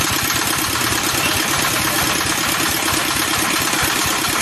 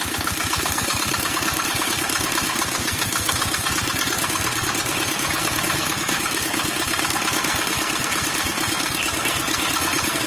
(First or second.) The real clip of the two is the first